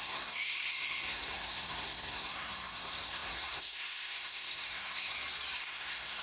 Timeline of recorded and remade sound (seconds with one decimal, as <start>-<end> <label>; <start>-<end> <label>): 0.0-5.1 remade; 5.1-5.6 recorded; 5.6-6.2 remade